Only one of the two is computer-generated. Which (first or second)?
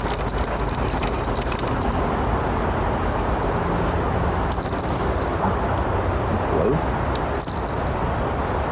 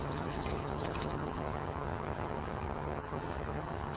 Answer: second